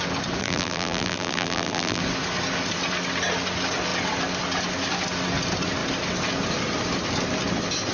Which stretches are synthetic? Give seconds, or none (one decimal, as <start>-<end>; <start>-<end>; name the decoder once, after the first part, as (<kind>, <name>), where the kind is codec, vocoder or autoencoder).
0.4-2.0 (vocoder, BigVGAN v2)